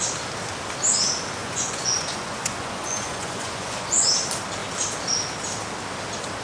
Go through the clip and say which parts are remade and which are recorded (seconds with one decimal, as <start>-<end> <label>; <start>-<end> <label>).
0.0-1.4 recorded; 1.4-4.1 remade; 4.1-6.4 recorded